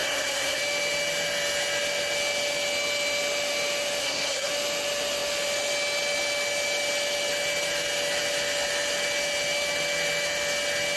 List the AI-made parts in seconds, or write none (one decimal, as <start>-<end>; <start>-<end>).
0.0-0.6; 4.0-4.5